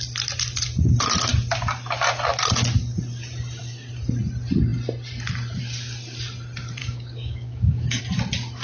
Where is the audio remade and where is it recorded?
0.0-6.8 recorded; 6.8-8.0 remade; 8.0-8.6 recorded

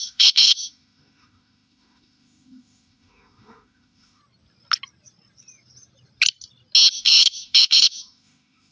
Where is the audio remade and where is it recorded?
0.0-4.2 remade; 4.2-6.9 recorded; 6.9-8.7 remade